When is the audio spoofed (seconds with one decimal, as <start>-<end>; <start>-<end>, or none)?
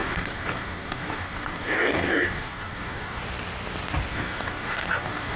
0.0-3.2; 4.1-5.4